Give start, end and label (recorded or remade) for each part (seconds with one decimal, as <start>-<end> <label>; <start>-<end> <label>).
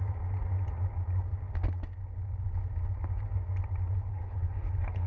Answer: 0.0-4.1 recorded; 4.1-5.1 remade